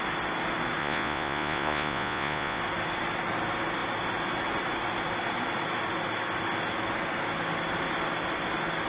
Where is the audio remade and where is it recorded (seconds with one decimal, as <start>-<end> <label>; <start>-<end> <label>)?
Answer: 0.0-0.8 recorded; 0.8-2.6 remade; 2.6-8.9 recorded